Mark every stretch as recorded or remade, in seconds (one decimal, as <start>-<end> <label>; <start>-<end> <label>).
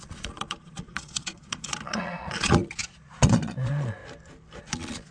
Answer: 0.0-4.0 remade; 4.0-4.6 recorded; 4.6-5.1 remade